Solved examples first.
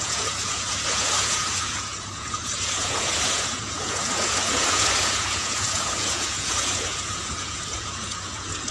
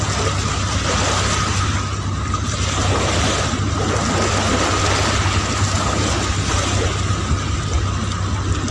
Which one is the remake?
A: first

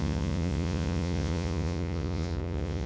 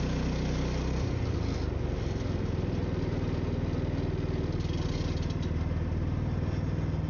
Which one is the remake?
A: first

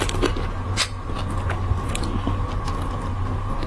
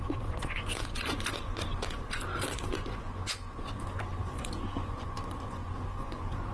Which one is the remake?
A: second